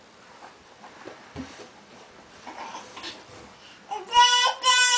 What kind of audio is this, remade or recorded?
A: recorded